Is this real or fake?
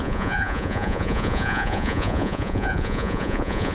fake